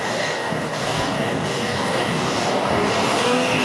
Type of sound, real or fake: fake